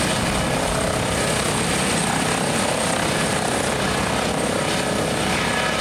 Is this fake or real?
real